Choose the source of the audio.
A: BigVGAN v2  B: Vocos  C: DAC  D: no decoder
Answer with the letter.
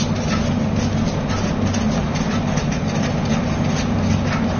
D